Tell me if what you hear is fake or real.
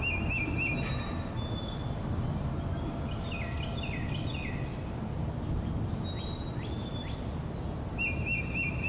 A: real